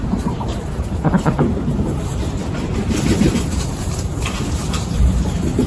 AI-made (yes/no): yes